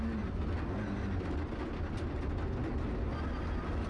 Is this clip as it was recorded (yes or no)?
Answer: yes